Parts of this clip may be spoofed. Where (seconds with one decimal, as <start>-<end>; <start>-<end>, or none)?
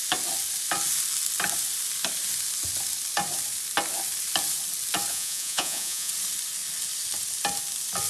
5.1-6.1